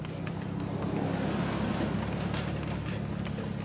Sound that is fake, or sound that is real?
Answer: real